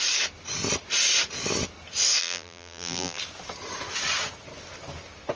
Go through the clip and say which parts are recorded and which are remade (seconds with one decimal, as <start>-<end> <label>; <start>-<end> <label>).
0.0-2.2 recorded; 2.2-3.2 remade; 3.2-5.4 recorded